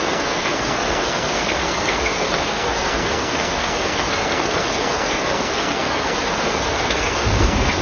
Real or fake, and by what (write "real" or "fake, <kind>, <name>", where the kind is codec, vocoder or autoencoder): fake, codec, SNAC